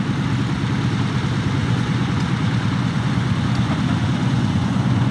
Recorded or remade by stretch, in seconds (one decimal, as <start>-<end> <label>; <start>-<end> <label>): 0.0-1.6 recorded; 1.6-5.1 remade